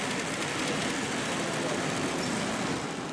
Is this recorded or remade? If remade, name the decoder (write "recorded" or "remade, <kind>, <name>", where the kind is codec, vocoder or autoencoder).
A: recorded